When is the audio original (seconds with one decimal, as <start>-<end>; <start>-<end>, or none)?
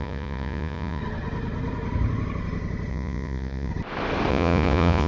1.0-2.9; 3.7-4.3